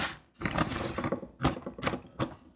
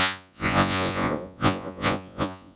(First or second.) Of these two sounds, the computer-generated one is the second